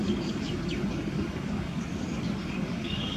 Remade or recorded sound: remade